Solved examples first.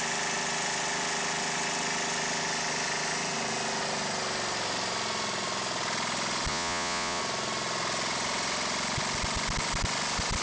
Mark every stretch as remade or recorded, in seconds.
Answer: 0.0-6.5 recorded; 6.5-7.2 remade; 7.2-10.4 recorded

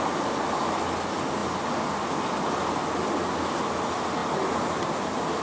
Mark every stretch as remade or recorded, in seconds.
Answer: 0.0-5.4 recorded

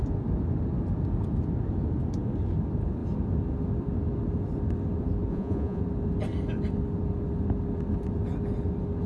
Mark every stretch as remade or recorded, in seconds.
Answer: 0.0-5.3 recorded; 5.3-5.8 remade; 5.8-9.1 recorded